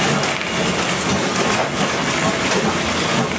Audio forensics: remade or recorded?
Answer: recorded